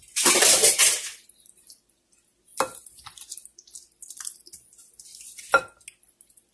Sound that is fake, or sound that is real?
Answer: real